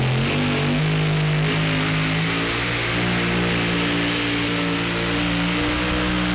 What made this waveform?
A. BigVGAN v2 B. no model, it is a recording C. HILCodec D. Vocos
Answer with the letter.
B